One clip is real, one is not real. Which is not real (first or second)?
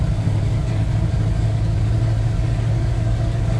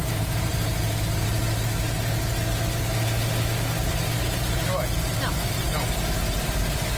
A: first